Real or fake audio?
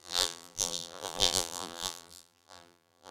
fake